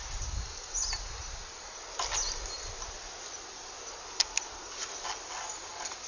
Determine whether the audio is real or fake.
real